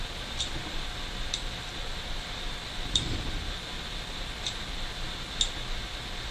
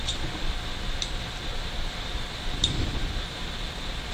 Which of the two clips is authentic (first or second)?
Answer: first